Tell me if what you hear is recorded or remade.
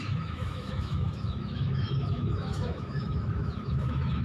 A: remade